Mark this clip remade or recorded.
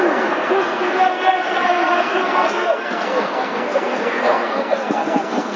remade